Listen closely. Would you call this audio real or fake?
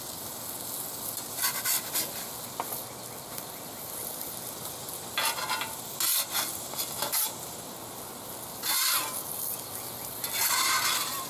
real